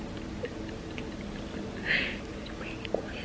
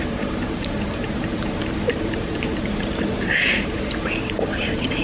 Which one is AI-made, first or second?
second